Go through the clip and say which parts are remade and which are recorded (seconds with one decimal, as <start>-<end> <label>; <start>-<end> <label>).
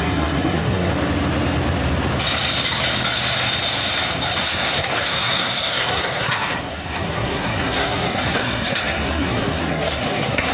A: 0.0-0.9 remade; 0.9-4.4 recorded; 4.4-10.5 remade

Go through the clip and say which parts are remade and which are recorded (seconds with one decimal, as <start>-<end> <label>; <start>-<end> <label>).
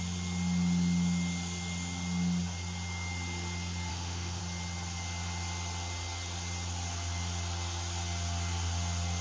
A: 0.0-3.9 recorded; 3.9-4.4 remade; 4.4-9.2 recorded